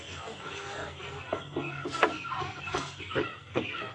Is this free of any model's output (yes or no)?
no